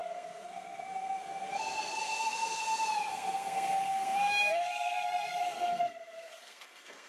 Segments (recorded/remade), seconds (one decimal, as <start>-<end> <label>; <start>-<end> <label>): 0.0-2.6 remade; 2.6-3.1 recorded; 3.1-7.1 remade